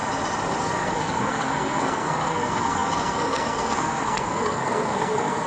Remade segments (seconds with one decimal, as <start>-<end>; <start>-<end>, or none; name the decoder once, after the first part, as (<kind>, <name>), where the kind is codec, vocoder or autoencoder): 0.6-5.5 (codec, SNAC)